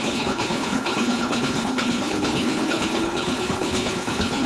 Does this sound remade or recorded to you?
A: remade